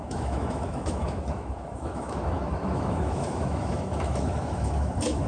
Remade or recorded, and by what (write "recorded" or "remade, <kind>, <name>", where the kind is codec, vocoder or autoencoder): remade, autoencoder, DAC-VAE